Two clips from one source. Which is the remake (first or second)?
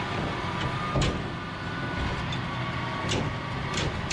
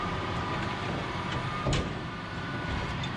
second